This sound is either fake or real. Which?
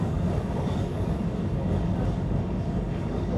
fake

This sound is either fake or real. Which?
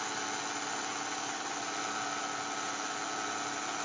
real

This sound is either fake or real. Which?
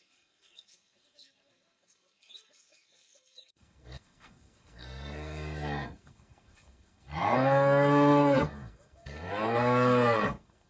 fake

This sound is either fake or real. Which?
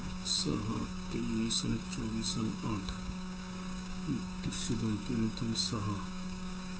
fake